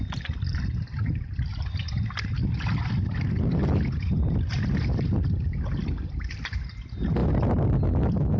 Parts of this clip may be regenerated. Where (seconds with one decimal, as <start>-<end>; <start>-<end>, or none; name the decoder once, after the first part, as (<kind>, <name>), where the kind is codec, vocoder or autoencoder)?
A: none